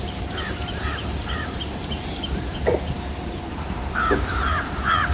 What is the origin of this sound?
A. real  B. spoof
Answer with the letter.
B